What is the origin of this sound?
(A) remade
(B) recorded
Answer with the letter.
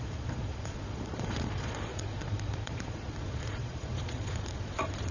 A